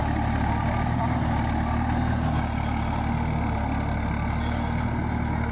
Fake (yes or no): no